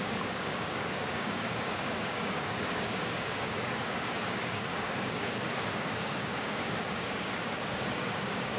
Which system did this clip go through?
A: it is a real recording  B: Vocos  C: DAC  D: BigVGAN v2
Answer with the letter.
C